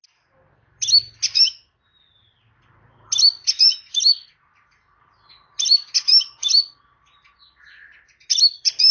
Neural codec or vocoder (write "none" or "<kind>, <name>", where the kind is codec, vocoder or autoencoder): none